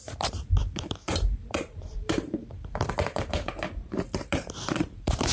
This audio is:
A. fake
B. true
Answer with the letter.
A